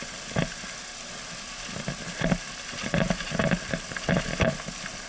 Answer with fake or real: real